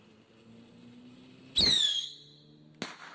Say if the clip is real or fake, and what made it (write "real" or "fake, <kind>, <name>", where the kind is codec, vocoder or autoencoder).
real